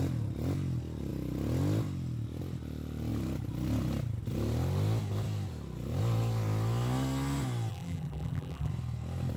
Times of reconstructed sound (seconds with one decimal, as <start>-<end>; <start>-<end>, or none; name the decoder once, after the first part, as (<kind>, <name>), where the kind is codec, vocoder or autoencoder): 7.7-8.7 (vocoder, BigVGAN v2)